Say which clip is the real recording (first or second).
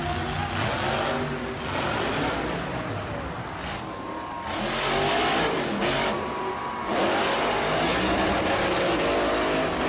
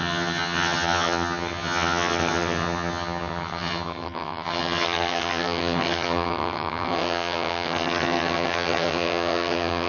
first